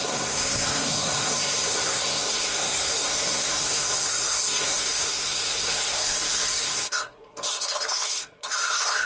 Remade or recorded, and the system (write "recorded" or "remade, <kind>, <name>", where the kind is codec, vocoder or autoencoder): remade, codec, SNAC